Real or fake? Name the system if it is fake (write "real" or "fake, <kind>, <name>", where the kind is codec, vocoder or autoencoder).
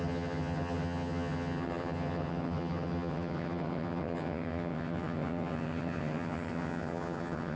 fake, vocoder, HiFi-GAN